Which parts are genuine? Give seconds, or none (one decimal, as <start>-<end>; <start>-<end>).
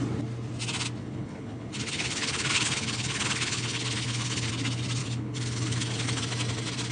0.0-1.0; 4.5-5.0; 6.2-6.9